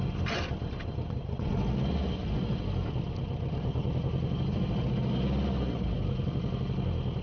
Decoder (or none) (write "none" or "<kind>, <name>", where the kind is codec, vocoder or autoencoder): none